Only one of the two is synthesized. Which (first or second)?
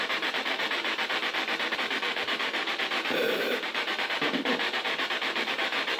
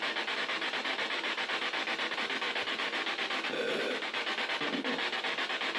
first